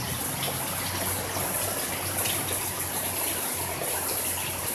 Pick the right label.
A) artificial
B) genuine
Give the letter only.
B